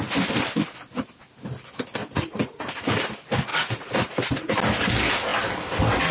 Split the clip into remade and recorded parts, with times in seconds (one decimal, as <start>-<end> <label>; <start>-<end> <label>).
0.0-2.0 recorded; 2.0-3.0 remade; 3.0-3.5 recorded; 3.5-4.1 remade; 4.1-6.1 recorded

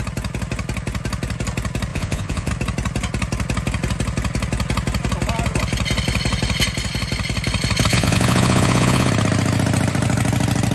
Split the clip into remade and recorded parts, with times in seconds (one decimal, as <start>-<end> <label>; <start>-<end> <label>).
0.0-1.9 recorded; 1.9-2.5 remade; 2.5-7.9 recorded; 7.9-9.1 remade; 9.1-10.7 recorded

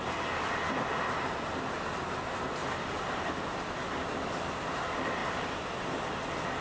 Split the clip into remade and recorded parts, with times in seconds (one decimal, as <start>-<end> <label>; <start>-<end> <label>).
0.0-6.6 recorded

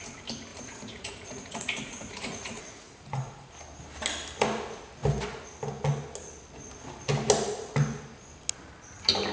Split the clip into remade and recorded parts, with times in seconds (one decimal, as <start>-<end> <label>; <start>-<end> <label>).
0.0-0.5 recorded; 0.5-3.5 remade; 3.5-9.3 recorded

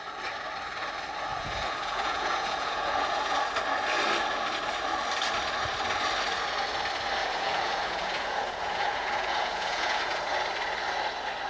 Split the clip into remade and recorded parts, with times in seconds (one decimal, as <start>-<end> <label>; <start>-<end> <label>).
0.0-1.3 recorded; 1.3-3.4 remade; 3.4-7.2 recorded; 7.2-10.3 remade; 10.3-11.5 recorded

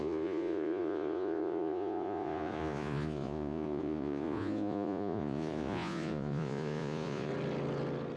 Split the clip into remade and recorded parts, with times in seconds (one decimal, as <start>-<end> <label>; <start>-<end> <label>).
0.0-7.3 remade; 7.3-8.2 recorded

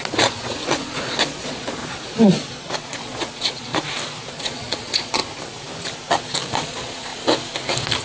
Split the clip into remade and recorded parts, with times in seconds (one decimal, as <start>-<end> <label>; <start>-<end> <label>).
0.0-1.8 remade; 1.8-2.8 recorded; 2.8-3.7 remade; 3.7-4.3 recorded; 4.3-5.2 remade; 5.2-6.5 recorded; 6.5-7.1 remade; 7.1-8.0 recorded